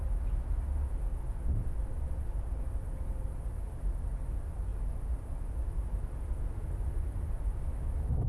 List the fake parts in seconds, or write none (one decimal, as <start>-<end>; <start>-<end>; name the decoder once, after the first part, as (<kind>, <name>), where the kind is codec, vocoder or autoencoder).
none